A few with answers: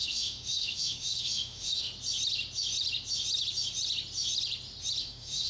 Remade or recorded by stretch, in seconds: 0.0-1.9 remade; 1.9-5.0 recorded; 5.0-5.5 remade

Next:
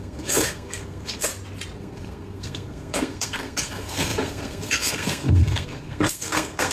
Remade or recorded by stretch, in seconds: 0.0-1.3 remade; 1.3-1.8 recorded; 1.8-6.7 remade

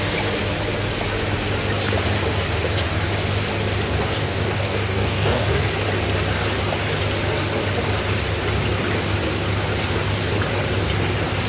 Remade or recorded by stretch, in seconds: 0.0-4.2 recorded; 4.2-5.6 remade; 5.6-11.5 recorded

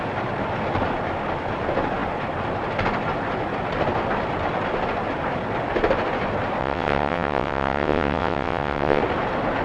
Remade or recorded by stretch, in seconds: 0.0-6.6 recorded; 6.6-9.0 remade; 9.0-9.6 recorded

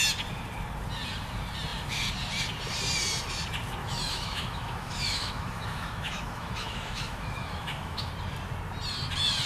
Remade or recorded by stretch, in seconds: 0.0-3.8 recorded; 3.8-8.1 remade; 8.1-9.5 recorded

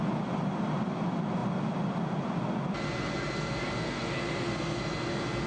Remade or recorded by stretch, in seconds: 0.0-3.8 recorded; 3.8-4.8 remade; 4.8-5.5 recorded

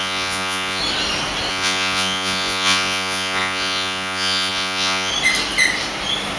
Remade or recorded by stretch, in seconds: 0.0-0.8 remade; 0.8-1.5 recorded; 1.5-5.1 remade; 5.1-6.4 recorded